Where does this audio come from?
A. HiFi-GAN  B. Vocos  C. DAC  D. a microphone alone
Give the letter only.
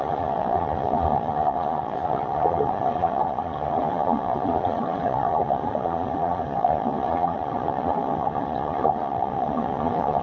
B